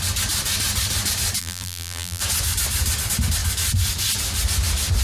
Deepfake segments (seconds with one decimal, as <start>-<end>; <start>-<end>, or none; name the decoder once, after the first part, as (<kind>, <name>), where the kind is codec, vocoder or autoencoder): 1.4-2.2 (vocoder, BigVGAN v2)